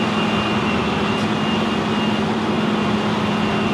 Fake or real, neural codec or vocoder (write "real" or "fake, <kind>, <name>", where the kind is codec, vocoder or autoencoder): real